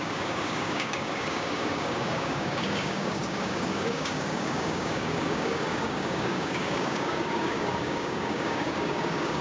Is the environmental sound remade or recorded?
remade